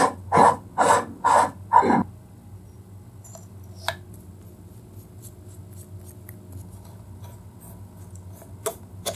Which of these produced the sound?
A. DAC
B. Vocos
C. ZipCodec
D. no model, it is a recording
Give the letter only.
D